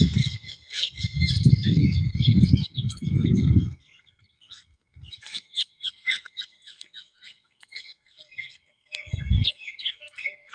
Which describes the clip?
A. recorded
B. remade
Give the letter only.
B